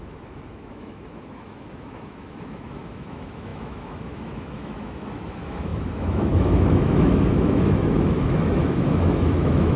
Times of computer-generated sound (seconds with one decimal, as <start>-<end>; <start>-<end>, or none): 0.0-9.8